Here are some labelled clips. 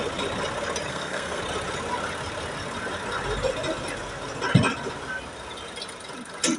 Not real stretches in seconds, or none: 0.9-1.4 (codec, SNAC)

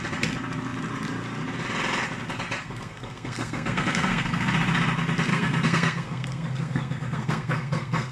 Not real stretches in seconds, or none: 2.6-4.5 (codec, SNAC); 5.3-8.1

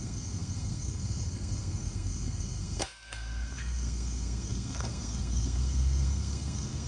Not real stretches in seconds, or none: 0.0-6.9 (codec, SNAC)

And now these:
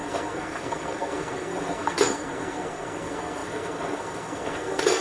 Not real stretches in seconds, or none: 0.0-5.0 (codec, SNAC)

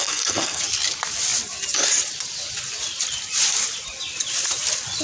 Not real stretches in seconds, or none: 0.0-0.6 (codec, SNAC)